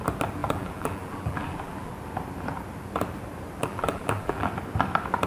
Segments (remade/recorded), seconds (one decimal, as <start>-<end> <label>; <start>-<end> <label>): 0.0-0.4 recorded; 0.4-1.9 remade; 1.9-3.6 recorded; 3.6-4.5 remade; 4.5-5.3 recorded